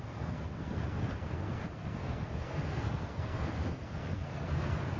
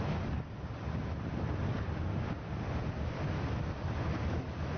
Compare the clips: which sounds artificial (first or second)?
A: first